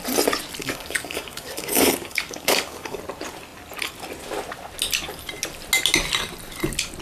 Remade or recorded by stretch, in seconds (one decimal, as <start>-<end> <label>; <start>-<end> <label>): 0.0-0.6 recorded; 0.6-3.0 remade; 3.0-7.0 recorded